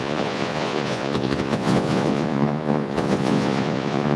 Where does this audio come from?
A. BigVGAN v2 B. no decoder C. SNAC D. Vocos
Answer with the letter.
D